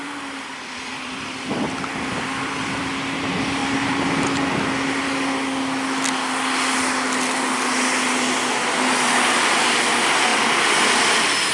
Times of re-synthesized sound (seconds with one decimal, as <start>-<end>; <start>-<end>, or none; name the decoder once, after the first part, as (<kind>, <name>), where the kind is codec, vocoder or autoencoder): 0.0-2.9 (vocoder, BigVGAN v2); 3.6-4.7